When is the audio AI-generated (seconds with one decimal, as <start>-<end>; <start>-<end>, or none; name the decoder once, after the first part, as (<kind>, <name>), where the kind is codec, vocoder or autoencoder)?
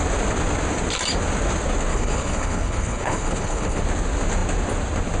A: 1.9-3.8 (codec, HILCodec)